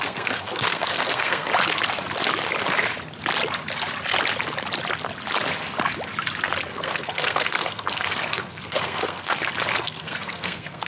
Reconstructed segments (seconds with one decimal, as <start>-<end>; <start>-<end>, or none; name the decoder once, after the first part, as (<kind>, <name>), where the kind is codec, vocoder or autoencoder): 0.0-1.5 (codec, SNAC); 6.7-9.3; 9.8-10.9